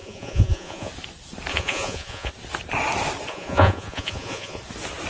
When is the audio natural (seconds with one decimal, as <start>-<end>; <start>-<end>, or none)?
0.9-1.5; 2.3-3.3; 4.6-5.1